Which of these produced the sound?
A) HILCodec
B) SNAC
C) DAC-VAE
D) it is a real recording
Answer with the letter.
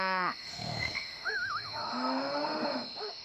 C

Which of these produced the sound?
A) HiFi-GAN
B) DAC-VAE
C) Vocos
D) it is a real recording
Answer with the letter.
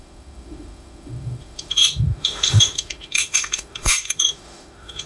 B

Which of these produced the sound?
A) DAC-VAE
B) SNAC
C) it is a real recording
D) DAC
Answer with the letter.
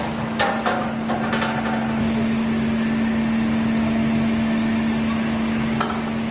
C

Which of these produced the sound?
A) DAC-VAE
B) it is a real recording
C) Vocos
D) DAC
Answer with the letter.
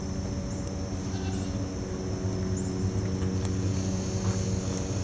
B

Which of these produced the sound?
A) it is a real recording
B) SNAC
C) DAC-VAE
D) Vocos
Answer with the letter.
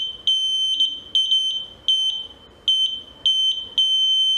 A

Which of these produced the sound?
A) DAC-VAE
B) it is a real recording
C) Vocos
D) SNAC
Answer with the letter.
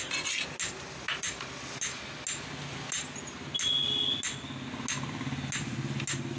B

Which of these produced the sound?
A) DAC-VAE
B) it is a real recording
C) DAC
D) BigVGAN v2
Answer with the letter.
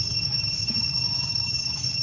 A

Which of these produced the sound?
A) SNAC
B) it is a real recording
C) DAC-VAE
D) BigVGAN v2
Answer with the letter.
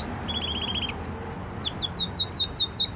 B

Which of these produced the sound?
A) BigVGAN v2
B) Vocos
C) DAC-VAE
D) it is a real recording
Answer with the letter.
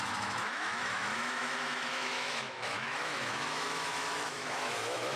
C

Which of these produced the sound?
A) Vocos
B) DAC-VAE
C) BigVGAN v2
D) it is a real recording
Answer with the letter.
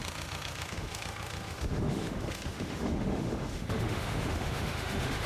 B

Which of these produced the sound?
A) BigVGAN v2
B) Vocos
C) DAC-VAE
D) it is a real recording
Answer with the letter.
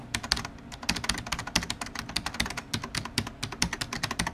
D